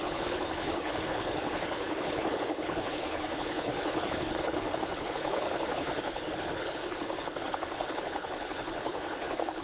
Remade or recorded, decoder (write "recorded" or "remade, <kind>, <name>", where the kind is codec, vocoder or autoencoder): remade, codec, HILCodec